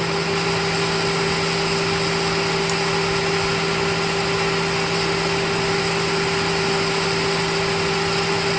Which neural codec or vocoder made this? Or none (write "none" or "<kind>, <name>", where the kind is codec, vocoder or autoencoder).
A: none